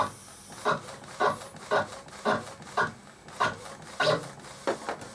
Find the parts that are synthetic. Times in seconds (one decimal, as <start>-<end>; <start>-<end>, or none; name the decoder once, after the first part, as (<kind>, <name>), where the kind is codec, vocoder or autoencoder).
none